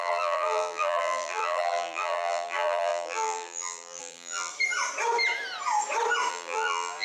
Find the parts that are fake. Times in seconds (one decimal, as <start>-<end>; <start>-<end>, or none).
0.0-4.5; 6.3-7.0